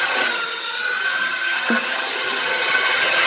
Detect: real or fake fake